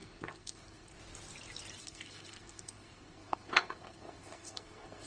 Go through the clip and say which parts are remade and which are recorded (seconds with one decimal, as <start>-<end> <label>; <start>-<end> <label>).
0.0-1.0 remade; 1.0-1.8 recorded; 1.8-5.1 remade